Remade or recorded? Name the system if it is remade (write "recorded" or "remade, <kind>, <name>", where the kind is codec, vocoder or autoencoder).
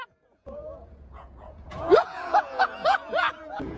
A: remade, vocoder, Vocos